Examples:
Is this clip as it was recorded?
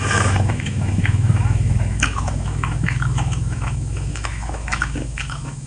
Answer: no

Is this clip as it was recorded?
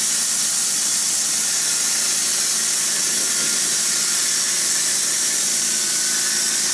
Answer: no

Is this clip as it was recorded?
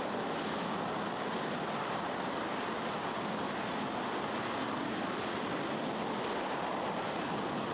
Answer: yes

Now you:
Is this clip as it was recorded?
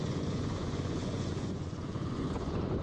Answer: no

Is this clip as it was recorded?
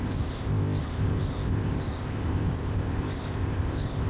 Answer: no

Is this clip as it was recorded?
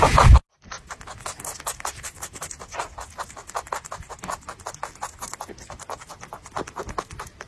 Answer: yes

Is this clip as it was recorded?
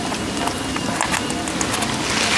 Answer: yes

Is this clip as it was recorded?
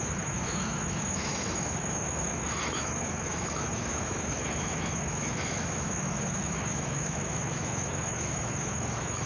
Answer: no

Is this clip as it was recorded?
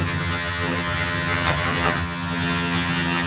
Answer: no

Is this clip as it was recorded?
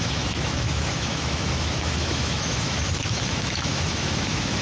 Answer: no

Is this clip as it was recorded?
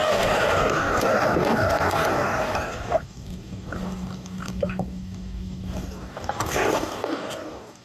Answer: no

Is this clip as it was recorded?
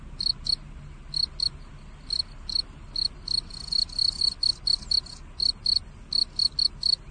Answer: yes